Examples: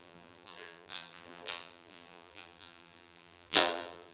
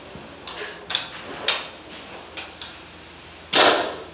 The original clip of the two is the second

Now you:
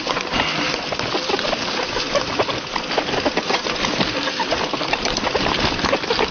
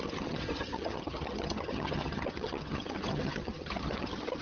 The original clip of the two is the first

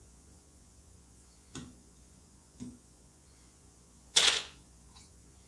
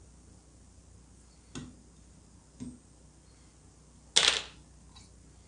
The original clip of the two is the second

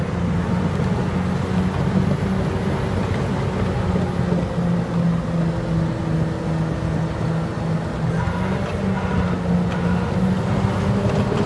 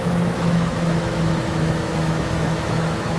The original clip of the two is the first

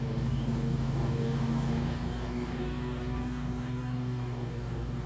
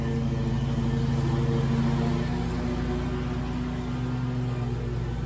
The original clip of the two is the second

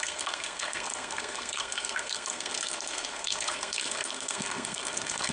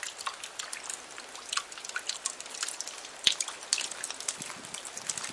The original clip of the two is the second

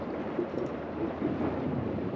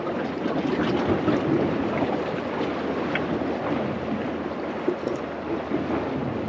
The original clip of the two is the second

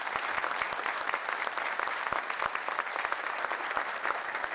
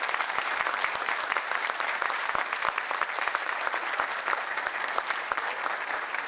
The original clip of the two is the first